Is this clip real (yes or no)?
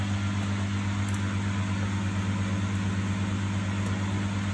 yes